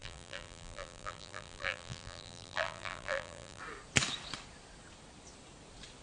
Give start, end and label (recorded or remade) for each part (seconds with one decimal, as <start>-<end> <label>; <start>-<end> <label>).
0.0-3.6 remade; 3.6-6.0 recorded